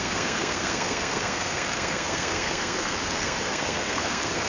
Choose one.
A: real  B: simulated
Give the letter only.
B